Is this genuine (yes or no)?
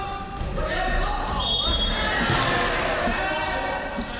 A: yes